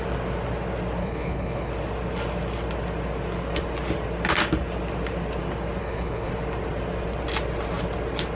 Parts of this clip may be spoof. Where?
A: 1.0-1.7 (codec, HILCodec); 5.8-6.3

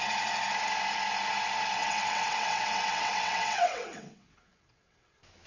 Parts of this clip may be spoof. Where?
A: 1.8-5.1 (vocoder, WaveNeXt)

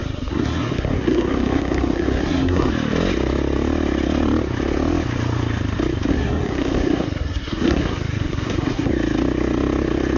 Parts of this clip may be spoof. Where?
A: 0.0-2.7 (codec, SNAC); 6.1-8.9

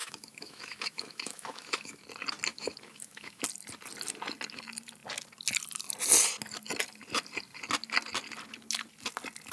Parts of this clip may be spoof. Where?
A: 0.0-2.0 (autoencoder, DAC-VAE); 2.5-3.4

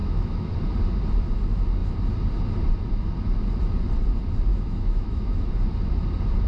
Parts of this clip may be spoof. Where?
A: 0.0-0.5 (autoencoder, DAC-VAE); 4.5-5.5